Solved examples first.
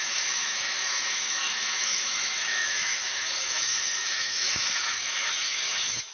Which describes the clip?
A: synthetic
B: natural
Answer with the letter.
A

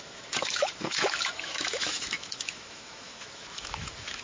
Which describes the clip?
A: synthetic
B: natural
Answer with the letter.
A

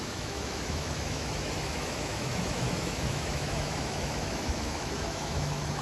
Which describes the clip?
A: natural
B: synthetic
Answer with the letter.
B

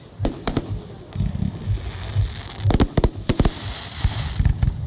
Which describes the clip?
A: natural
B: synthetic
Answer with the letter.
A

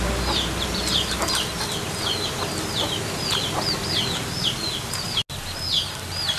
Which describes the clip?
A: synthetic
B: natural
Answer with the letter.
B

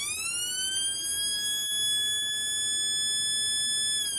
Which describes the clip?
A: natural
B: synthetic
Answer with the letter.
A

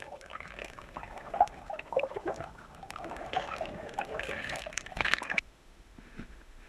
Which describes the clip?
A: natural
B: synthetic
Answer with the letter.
B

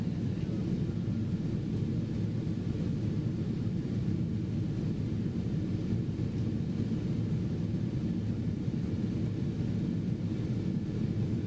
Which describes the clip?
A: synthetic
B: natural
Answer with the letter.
B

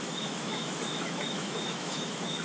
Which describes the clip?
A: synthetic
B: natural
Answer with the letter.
A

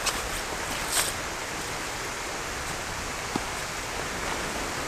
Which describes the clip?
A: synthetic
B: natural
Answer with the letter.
B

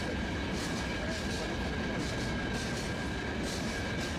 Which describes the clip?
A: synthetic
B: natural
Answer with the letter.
B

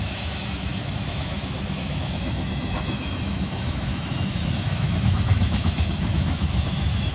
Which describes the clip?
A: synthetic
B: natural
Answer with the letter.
A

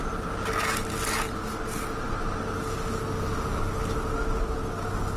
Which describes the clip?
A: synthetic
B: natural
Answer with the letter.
B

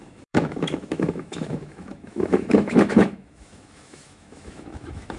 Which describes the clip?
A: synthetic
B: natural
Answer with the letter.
A